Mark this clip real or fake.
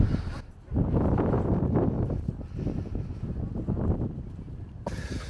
real